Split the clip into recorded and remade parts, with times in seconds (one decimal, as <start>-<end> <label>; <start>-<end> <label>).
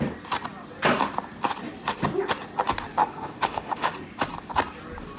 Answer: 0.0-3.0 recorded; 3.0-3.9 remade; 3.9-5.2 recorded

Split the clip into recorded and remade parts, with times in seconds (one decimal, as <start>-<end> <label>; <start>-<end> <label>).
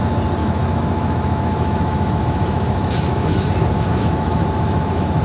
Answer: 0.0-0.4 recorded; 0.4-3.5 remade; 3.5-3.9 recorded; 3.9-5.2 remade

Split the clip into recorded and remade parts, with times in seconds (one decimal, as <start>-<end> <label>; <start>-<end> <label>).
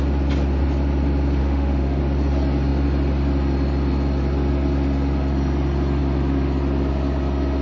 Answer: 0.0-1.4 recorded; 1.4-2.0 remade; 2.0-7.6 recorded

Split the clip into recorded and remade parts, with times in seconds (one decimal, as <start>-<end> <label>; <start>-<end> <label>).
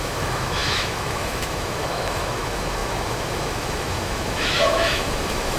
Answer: 0.0-5.6 remade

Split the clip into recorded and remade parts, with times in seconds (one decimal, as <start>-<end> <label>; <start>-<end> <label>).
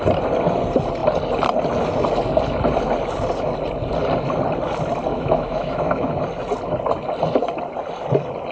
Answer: 0.0-5.1 recorded; 5.1-6.2 remade; 6.2-8.5 recorded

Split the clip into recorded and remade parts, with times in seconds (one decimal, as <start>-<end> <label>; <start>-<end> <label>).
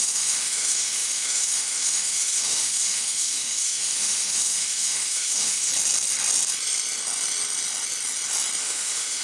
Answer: 0.0-5.7 remade; 5.7-8.6 recorded; 8.6-9.2 remade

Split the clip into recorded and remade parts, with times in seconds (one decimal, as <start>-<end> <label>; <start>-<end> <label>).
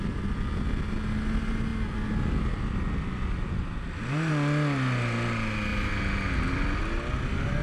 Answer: 0.0-7.6 recorded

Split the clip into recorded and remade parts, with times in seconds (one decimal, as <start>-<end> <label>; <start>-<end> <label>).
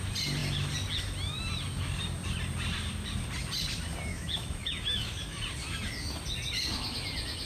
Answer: 0.0-4.1 recorded; 4.1-5.4 remade; 5.4-7.5 recorded